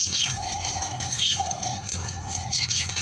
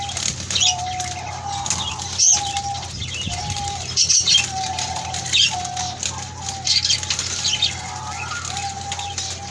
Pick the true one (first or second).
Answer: second